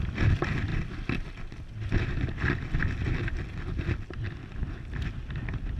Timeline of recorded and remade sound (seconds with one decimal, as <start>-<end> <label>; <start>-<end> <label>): 0.0-5.8 recorded